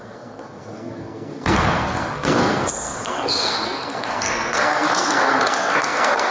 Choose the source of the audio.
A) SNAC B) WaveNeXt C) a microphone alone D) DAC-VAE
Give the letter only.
A